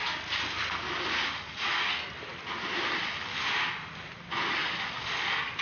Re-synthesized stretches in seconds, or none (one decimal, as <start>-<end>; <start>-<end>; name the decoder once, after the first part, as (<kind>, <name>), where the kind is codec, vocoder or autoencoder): none